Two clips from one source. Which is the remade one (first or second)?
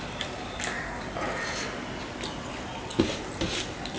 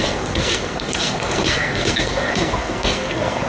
second